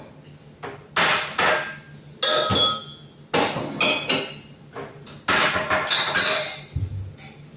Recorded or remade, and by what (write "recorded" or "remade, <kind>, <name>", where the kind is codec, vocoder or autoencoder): recorded